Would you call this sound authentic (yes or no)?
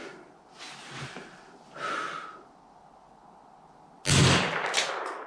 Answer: yes